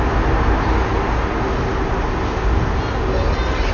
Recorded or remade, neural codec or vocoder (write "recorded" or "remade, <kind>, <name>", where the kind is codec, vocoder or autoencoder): recorded